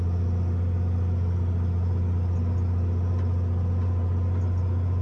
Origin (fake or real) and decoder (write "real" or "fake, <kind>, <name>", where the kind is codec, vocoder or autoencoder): real